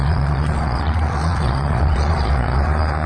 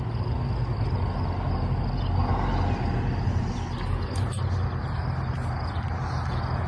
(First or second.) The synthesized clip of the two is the first